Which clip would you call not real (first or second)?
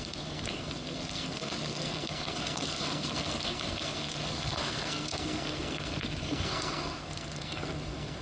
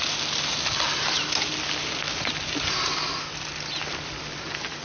first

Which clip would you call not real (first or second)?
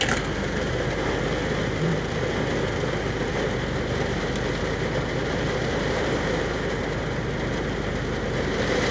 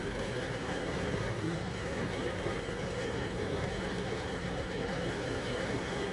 second